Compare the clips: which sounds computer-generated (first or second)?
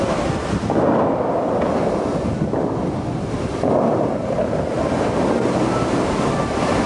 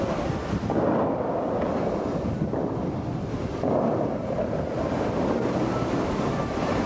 second